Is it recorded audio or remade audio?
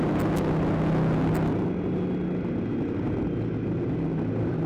recorded